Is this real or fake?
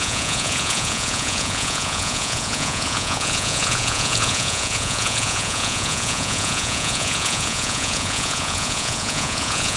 fake